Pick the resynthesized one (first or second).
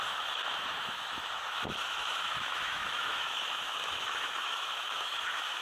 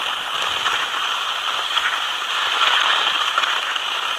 first